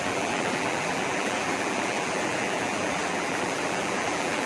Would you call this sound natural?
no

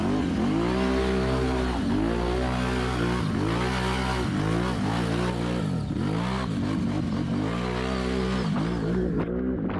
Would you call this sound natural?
yes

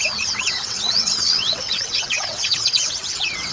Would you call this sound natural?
no